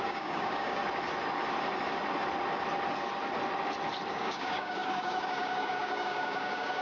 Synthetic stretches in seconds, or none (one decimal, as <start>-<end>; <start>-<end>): 0.0-0.8; 4.1-6.8